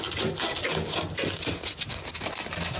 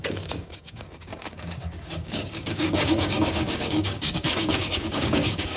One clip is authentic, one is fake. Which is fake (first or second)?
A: second